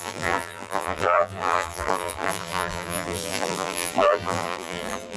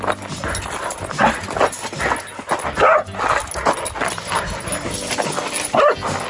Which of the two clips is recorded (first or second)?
second